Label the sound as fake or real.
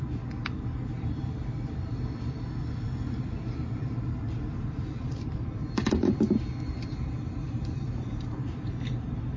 fake